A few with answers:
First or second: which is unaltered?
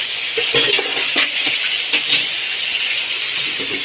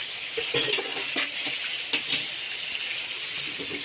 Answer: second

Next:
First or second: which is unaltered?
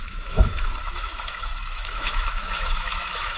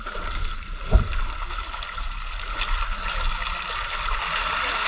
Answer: second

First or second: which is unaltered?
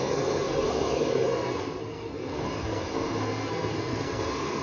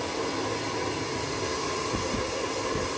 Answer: second